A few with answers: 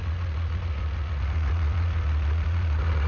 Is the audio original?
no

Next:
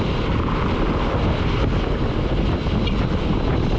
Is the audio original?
yes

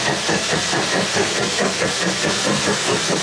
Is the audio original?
no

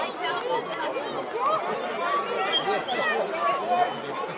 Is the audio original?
yes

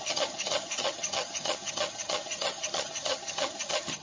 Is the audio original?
no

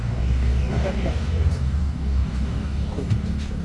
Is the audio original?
no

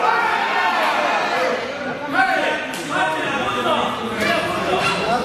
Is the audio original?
yes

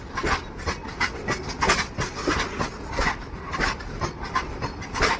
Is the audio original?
yes